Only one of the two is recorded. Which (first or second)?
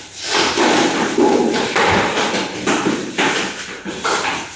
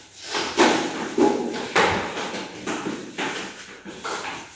second